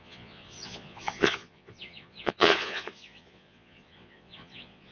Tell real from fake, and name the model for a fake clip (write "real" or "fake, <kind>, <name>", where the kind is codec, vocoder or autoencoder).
fake, vocoder, Vocos